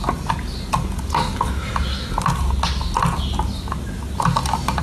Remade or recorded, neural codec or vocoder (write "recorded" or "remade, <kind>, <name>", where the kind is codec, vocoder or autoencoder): recorded